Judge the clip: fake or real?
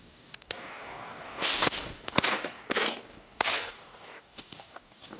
fake